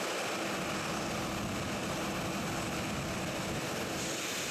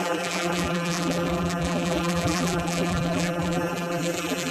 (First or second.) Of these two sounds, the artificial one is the second